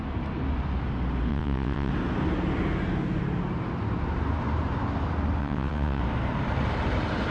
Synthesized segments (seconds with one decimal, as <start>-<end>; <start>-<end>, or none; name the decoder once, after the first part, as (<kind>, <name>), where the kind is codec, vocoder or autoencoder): 1.3-1.9 (vocoder, WaveNeXt); 5.4-6.0